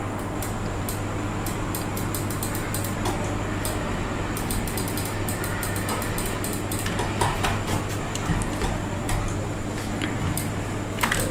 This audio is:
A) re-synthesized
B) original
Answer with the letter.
B